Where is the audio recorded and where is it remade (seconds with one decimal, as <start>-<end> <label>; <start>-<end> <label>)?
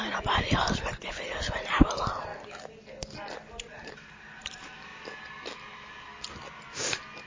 0.0-2.3 remade; 2.3-3.6 recorded; 3.6-4.9 remade; 4.9-7.3 recorded